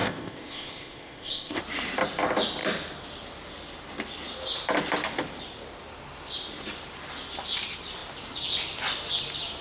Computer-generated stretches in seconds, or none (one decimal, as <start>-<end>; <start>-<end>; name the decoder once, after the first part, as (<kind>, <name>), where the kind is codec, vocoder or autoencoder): 0.0-1.6 (codec, ZipCodec)